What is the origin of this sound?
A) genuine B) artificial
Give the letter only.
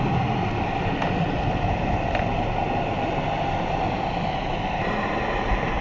A